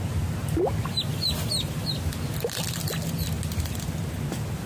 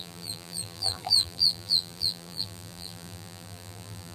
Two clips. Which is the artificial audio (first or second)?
second